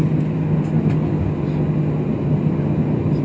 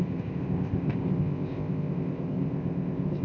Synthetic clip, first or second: second